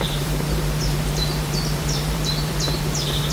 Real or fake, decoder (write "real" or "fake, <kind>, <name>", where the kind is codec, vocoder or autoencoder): fake, vocoder, BigVGAN v2